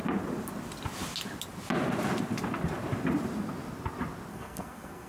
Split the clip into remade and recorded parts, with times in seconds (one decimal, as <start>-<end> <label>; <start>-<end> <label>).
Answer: 0.0-4.3 recorded; 4.3-5.1 remade